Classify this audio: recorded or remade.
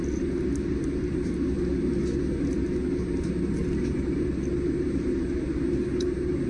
recorded